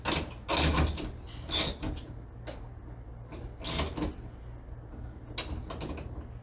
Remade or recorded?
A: recorded